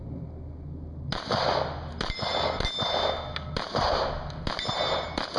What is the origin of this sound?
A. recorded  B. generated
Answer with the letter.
A